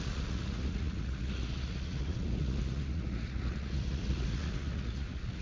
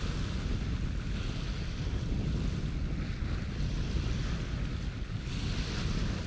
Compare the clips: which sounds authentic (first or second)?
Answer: second